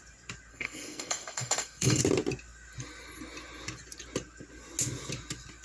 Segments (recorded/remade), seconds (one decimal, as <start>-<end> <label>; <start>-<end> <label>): 0.0-0.5 recorded; 0.5-2.0 remade; 2.0-5.6 recorded